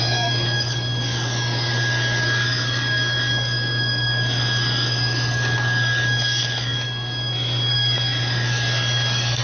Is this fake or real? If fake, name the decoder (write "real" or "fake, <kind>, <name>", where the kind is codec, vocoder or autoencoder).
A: fake, codec, DAC